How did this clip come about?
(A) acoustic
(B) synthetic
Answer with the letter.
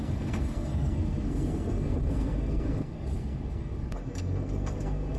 B